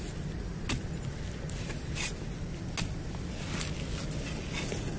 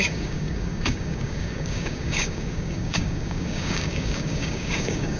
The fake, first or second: second